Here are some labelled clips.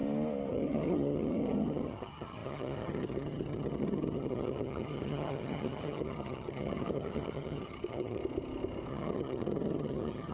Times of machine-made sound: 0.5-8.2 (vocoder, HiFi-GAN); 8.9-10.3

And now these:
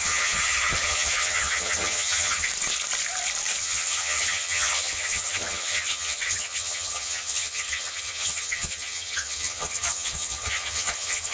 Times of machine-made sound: 0.0-2.5 (vocoder, HiFi-GAN); 3.6-11.3

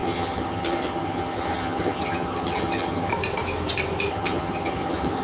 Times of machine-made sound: 0.0-3.1 (vocoder, HiFi-GAN); 4.1-5.2

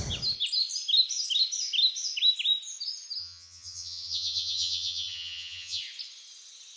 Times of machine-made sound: 3.2-5.8 (vocoder, HiFi-GAN)

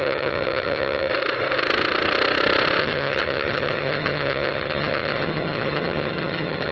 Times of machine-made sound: 0.0-1.1 (vocoder, HiFi-GAN); 2.8-6.7